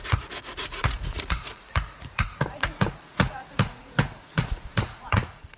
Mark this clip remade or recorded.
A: remade